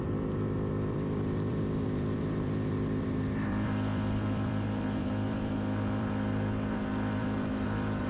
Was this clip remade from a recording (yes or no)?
yes